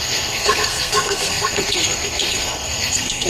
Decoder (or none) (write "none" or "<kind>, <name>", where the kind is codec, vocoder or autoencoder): codec, SNAC